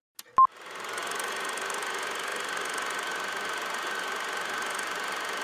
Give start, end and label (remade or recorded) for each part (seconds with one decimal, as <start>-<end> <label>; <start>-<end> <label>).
0.0-5.4 recorded